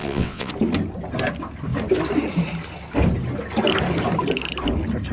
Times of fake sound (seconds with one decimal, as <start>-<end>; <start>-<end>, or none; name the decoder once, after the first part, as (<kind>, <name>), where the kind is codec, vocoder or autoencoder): 0.0-0.5 (vocoder, WaveNeXt)